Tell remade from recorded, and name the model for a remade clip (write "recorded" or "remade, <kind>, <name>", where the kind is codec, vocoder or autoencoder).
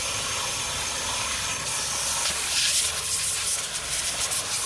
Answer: recorded